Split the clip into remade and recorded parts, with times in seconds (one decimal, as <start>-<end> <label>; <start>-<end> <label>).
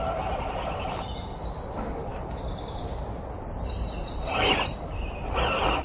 0.0-5.8 recorded